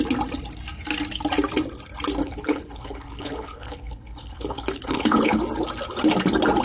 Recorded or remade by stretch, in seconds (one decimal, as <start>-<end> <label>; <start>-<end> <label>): 0.0-2.2 recorded; 2.2-5.4 remade; 5.4-6.6 recorded